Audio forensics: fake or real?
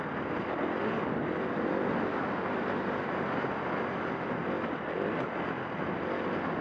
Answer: real